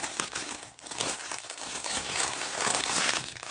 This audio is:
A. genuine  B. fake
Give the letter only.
B